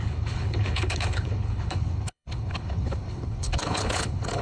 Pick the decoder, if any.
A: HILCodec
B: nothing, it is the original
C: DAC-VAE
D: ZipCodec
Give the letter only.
A